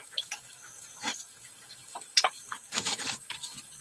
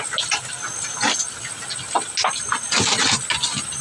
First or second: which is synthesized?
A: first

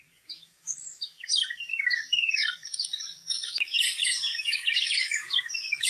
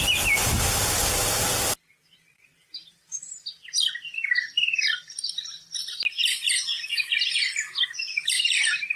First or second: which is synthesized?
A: first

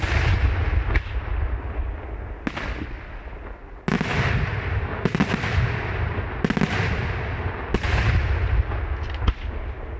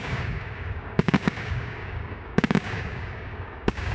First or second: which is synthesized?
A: second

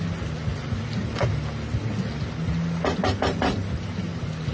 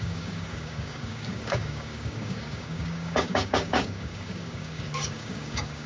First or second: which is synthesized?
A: second